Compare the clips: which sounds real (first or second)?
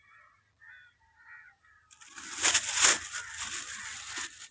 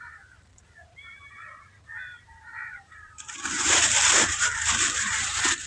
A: first